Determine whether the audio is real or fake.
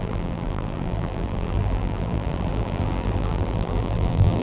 fake